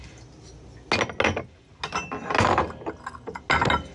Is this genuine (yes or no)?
yes